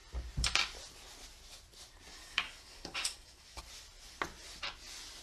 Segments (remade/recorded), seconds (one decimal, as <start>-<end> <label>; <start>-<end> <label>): 0.0-2.1 recorded; 2.1-3.6 remade; 3.6-5.2 recorded